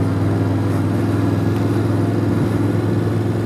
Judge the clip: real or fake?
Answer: real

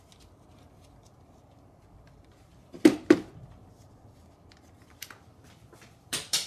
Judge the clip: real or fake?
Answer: fake